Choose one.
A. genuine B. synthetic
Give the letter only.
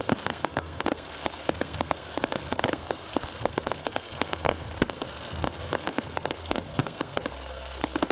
B